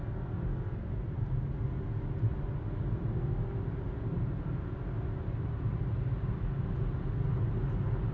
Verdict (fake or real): real